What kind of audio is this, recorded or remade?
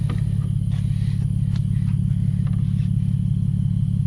recorded